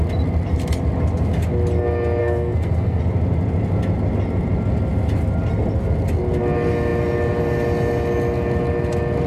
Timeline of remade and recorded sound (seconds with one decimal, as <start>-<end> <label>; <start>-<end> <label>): 0.0-2.2 recorded; 2.2-3.0 remade; 3.0-9.3 recorded